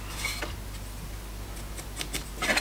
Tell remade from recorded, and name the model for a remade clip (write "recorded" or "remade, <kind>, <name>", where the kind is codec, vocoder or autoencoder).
recorded